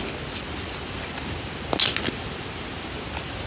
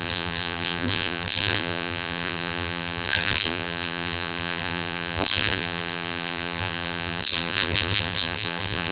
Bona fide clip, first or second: first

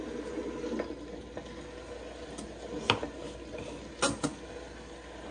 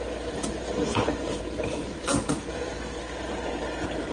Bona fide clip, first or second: first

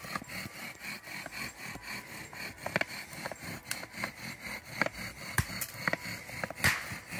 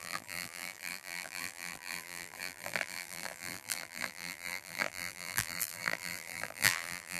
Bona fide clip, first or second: first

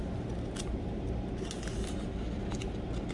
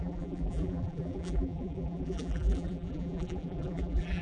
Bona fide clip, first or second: first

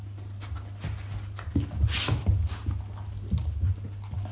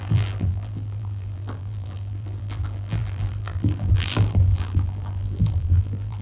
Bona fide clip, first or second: first